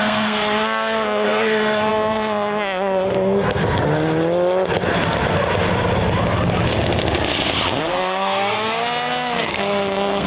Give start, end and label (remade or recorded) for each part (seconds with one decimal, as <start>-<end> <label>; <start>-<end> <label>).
0.0-3.6 remade; 3.6-7.8 recorded; 7.8-10.3 remade